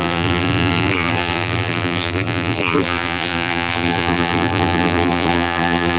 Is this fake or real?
fake